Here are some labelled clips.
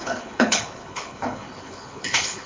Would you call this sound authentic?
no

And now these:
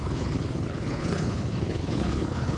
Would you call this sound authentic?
no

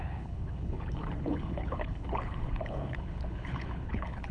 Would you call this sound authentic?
no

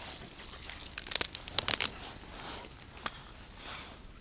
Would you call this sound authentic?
yes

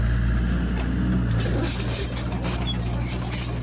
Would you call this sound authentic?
yes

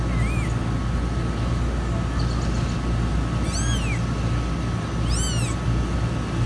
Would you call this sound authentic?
yes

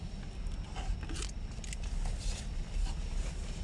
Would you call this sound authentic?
yes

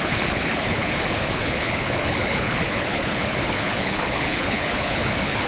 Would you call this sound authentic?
no